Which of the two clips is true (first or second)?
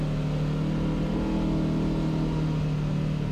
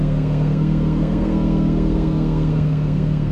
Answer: first